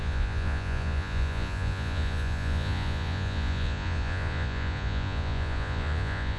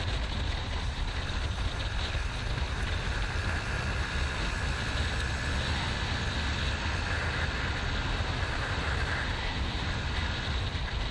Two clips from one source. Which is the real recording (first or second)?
second